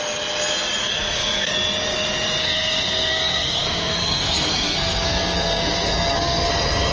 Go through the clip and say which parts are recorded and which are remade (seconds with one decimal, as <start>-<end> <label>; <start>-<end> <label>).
0.0-0.8 recorded; 0.8-1.5 remade; 1.5-2.4 recorded; 2.4-6.5 remade; 6.5-6.9 recorded